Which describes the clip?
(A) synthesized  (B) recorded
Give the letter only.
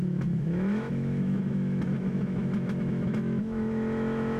A